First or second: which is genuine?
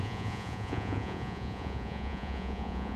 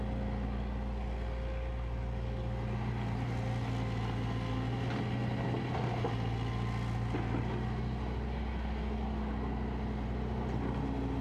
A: second